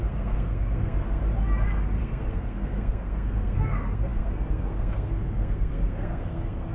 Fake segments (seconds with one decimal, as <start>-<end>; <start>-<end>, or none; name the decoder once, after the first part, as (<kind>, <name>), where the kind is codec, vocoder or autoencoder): 0.0-1.2 (codec, SNAC); 2.0-6.7